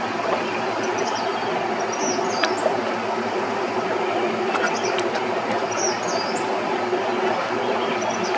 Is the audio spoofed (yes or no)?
no